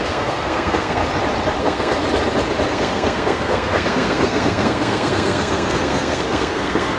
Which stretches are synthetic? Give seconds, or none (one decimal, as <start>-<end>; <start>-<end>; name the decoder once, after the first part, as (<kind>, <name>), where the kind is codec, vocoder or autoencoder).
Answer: 0.0-1.0 (codec, SNAC); 1.6-2.0; 2.7-7.0